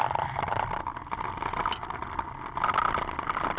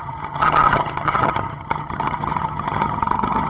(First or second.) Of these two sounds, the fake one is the second